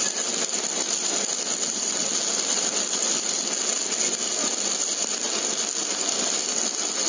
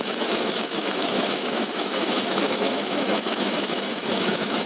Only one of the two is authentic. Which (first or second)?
first